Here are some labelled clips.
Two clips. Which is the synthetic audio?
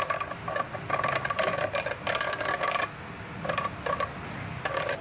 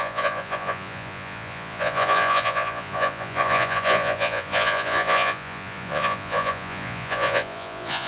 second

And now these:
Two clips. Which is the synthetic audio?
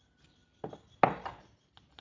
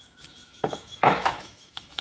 second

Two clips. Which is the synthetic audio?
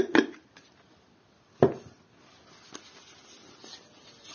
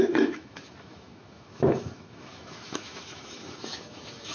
second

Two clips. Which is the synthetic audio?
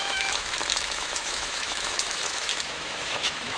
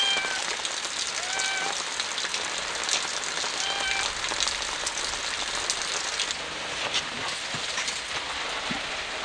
first